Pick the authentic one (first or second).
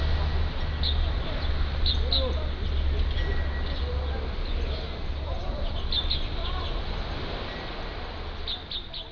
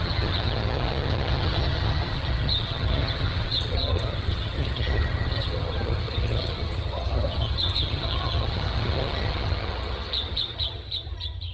first